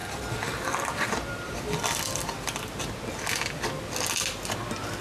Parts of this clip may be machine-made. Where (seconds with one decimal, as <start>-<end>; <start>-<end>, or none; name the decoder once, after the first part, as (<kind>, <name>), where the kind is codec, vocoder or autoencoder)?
0.0-2.9 (vocoder, BigVGAN v2)